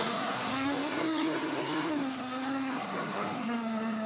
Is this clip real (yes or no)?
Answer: no